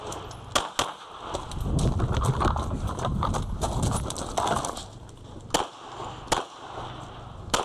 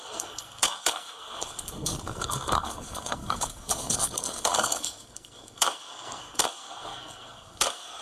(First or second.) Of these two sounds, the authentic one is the first